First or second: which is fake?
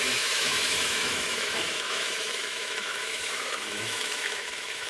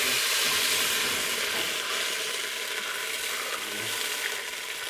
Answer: first